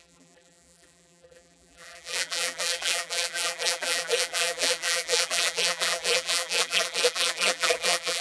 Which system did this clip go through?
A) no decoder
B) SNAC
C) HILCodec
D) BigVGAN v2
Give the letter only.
D